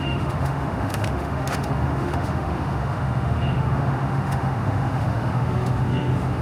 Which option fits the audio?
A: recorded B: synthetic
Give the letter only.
B